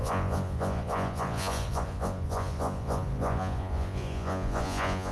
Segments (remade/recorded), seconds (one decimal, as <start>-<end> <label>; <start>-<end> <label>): 0.0-5.1 remade